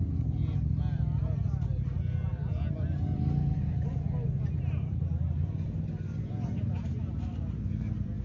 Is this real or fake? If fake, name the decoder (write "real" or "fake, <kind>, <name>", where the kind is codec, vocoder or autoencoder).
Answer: real